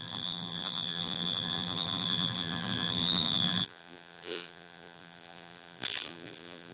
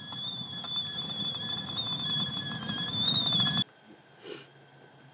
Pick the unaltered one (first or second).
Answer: second